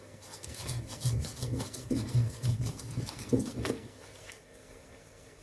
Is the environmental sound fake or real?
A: fake